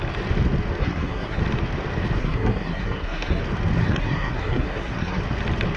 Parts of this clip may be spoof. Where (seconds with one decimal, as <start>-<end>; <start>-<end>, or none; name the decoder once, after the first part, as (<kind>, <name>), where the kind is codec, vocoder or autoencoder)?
0.8-1.4 (codec, SNAC); 2.2-3.4; 3.8-5.2